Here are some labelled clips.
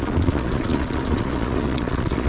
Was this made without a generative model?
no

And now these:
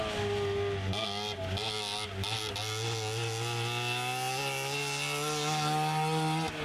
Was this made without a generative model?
yes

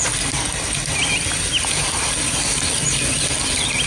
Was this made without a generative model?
yes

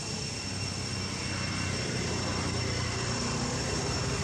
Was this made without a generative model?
yes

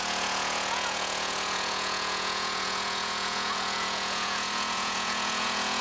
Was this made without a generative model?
no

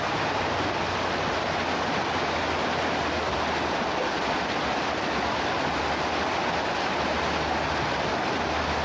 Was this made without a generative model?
yes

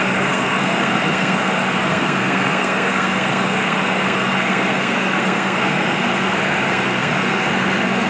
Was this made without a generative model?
no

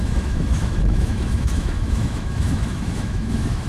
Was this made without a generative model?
no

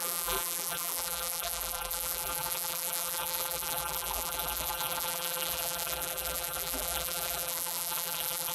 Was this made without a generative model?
no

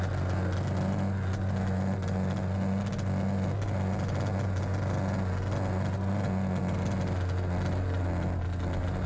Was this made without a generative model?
yes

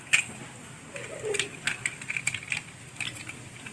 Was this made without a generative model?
yes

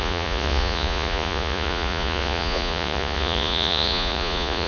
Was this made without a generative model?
no